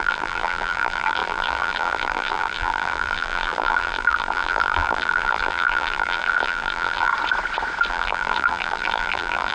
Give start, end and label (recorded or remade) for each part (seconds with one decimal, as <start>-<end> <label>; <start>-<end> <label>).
0.0-7.1 remade; 7.1-7.9 recorded; 7.9-9.5 remade